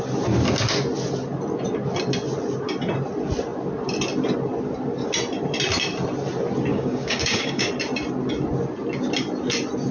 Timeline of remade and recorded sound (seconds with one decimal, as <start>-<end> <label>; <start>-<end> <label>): 0.0-6.7 recorded; 6.7-7.7 remade; 7.7-9.9 recorded